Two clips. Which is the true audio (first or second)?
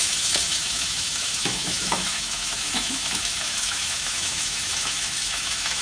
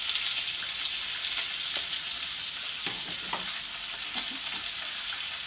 second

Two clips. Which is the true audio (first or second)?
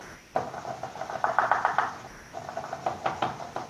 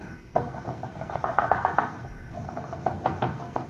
first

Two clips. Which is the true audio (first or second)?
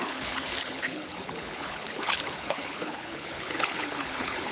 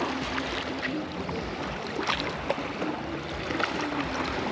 second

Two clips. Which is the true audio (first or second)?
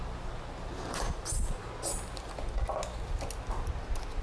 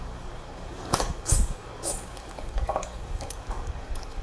first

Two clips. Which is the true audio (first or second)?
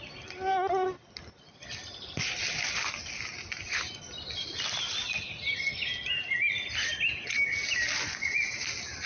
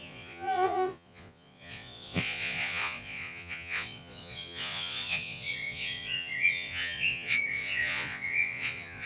first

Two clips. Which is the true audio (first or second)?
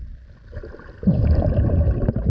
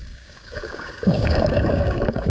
first